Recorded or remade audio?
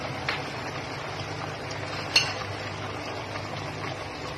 recorded